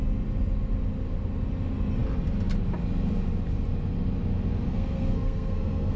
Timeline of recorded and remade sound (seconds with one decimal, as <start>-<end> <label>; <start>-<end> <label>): 0.0-4.7 recorded; 4.7-6.0 remade